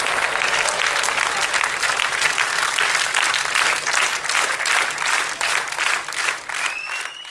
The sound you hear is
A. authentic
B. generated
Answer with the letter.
A